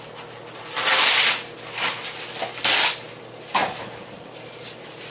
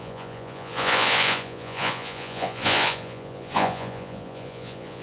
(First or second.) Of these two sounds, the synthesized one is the second